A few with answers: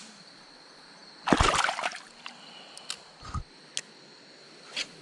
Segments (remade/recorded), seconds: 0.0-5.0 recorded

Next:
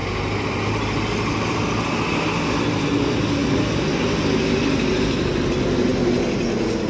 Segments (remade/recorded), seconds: 0.0-6.9 recorded

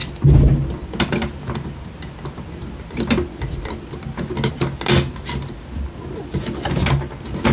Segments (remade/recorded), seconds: 0.0-7.5 recorded

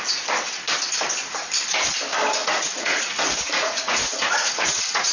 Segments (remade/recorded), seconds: 0.0-2.4 recorded; 2.4-5.1 remade

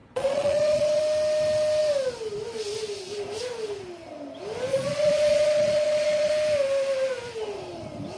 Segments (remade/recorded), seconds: 0.0-1.0 remade; 1.0-4.7 recorded; 4.7-6.3 remade; 6.3-8.2 recorded

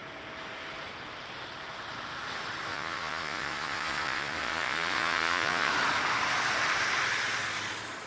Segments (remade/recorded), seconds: 0.0-2.7 recorded; 2.7-5.7 remade; 5.7-8.1 recorded